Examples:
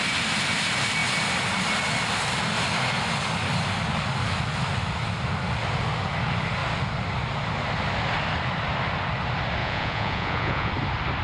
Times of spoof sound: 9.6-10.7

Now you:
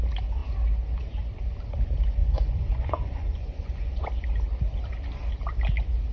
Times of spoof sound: 2.2-4.1

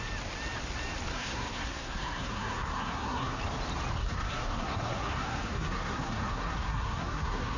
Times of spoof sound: 1.1-3.4; 4.0-7.6